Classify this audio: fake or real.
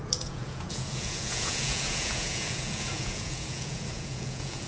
fake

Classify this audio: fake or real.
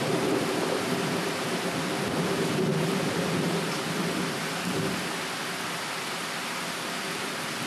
fake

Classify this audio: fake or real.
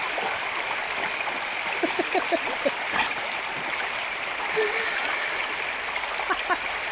real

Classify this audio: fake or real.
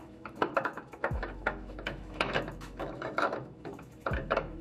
fake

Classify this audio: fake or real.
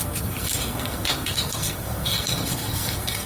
fake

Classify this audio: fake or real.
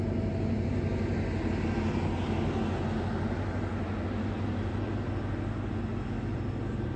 real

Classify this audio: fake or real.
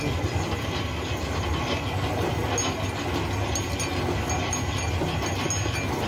real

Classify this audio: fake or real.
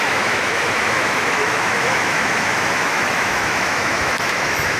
fake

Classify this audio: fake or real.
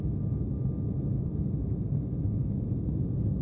real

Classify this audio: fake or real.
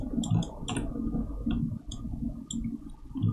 real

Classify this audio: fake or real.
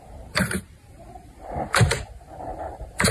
fake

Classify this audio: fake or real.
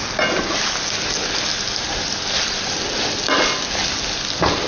real